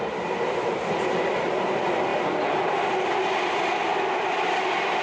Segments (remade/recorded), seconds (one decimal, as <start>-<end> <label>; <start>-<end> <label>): 0.0-5.0 recorded